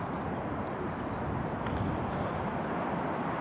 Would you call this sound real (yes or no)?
yes